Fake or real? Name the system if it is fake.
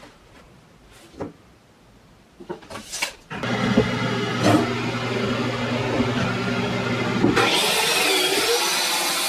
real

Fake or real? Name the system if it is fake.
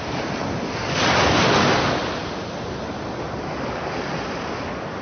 real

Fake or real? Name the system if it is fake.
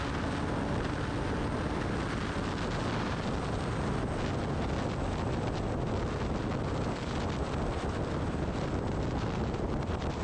real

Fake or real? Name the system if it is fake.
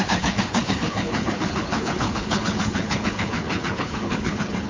fake, codec, HILCodec